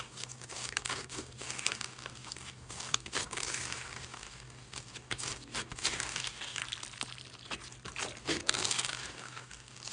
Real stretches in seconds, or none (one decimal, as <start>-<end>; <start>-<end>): 6.6-8.2